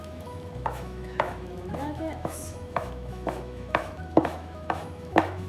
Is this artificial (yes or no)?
yes